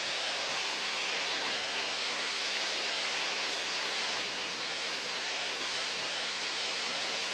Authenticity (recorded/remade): remade